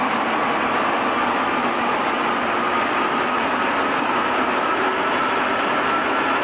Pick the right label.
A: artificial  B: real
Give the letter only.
B